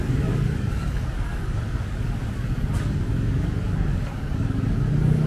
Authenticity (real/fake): fake